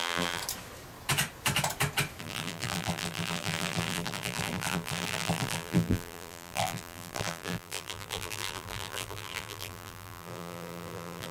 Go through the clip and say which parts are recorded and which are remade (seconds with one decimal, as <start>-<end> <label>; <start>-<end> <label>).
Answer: 0.0-0.4 remade; 0.4-2.2 recorded; 2.2-11.3 remade